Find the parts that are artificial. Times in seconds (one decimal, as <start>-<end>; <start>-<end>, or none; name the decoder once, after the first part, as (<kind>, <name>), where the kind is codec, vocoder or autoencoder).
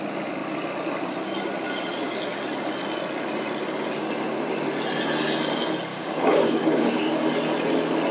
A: 5.9-7.3 (codec, DAC)